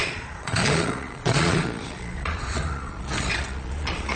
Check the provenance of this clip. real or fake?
fake